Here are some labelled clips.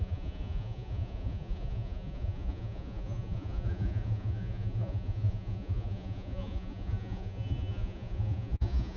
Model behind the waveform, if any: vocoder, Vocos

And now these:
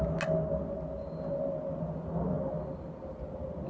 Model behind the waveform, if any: none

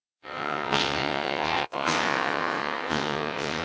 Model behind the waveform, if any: vocoder, WaveNeXt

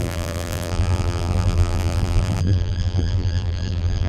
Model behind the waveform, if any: vocoder, BigVGAN v2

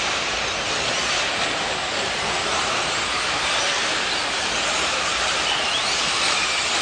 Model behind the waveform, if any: vocoder, BigVGAN v2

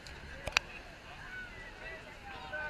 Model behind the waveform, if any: none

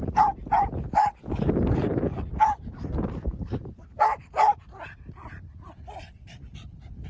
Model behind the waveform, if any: none